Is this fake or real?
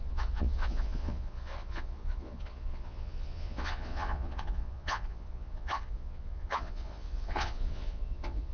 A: fake